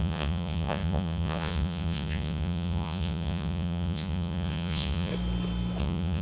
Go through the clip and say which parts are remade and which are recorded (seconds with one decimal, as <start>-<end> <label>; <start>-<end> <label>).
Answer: 0.0-5.1 remade; 5.1-5.8 recorded; 5.8-6.2 remade